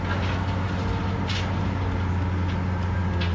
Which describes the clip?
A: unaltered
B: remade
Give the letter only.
A